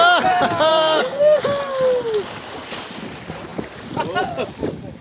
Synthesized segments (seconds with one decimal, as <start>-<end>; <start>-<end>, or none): 0.7-1.4